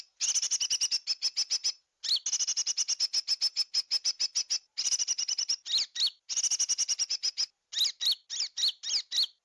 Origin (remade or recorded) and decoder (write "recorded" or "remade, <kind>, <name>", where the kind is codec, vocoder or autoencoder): recorded